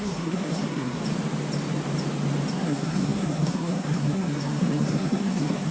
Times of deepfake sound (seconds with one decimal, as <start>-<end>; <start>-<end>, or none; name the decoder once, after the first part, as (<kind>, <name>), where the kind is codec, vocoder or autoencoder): 0.0-1.0 (codec, SNAC); 2.5-5.7